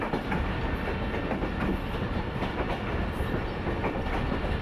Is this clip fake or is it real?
real